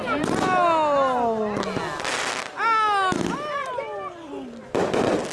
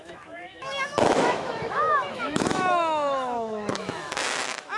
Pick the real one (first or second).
first